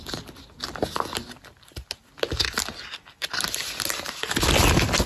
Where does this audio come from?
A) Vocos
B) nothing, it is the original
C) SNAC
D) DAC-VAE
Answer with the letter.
B